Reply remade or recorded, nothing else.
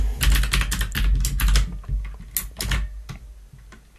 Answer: recorded